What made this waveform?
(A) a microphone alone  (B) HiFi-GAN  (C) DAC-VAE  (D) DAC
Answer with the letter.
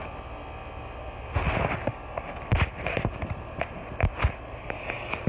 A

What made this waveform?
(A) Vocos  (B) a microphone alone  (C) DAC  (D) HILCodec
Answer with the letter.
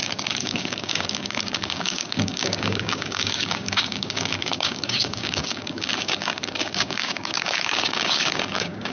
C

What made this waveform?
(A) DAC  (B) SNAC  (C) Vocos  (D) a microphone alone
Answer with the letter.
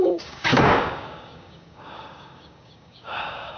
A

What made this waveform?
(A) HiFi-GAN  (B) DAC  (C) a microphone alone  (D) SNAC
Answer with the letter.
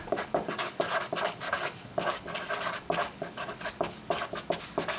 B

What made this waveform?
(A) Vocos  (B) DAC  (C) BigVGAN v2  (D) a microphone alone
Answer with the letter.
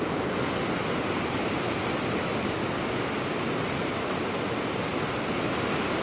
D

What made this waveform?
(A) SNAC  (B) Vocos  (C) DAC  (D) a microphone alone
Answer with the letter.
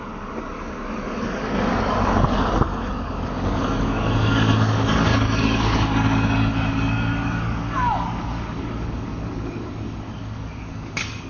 C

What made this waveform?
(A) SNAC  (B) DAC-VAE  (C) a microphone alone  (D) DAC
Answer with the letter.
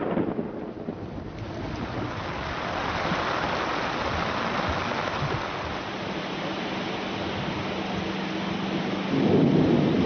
C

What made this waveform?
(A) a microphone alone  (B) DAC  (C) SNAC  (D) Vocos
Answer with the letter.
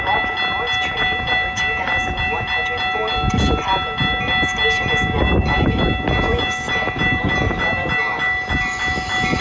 A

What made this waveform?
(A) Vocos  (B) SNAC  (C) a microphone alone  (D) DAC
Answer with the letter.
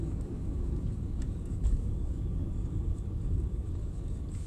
D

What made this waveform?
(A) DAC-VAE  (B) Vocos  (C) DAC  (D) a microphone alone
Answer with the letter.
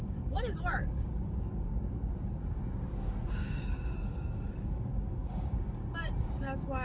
C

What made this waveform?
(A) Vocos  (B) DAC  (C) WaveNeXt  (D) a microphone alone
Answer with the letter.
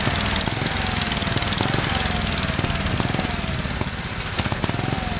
D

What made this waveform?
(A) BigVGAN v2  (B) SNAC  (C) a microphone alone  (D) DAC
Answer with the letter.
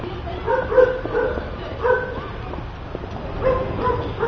C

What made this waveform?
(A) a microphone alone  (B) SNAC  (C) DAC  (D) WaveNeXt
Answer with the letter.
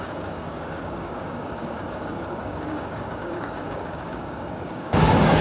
C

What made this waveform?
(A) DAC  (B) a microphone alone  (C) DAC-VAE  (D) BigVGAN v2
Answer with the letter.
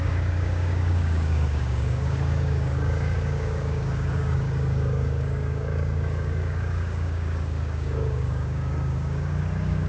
A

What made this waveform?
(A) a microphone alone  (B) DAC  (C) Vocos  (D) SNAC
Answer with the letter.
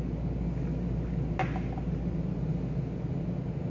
A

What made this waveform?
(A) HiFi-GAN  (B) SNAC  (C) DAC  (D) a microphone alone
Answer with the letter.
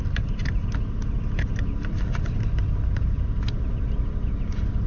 D